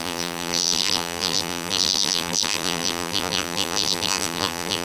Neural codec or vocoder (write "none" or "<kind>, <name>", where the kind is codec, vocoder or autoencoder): vocoder, BigVGAN v2